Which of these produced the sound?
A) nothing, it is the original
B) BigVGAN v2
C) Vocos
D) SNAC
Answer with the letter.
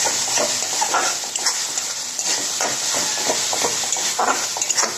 A